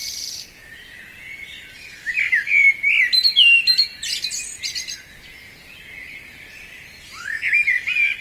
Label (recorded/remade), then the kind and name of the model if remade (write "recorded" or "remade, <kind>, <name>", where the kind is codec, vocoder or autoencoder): recorded